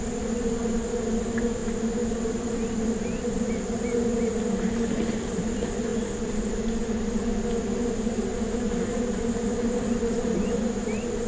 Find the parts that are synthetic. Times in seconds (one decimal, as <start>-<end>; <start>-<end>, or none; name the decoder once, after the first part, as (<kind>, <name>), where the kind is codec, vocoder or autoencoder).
none